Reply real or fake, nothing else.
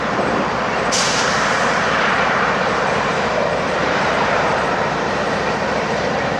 fake